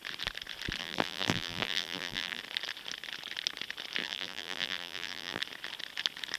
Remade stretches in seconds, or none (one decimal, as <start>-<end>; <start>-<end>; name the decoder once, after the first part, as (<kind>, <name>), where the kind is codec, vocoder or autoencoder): 0.8-2.4 (vocoder, BigVGAN v2); 4.0-5.4